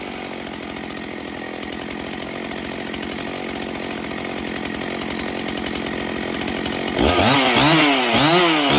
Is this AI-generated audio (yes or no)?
no